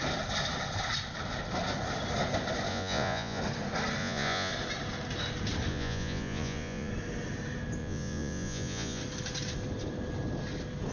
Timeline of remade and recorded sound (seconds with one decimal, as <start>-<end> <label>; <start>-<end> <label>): 0.0-2.7 recorded; 2.7-3.4 remade; 3.4-4.0 recorded; 4.0-4.5 remade; 4.5-5.7 recorded; 5.7-6.9 remade; 6.9-7.8 recorded; 7.8-9.0 remade; 9.0-10.9 recorded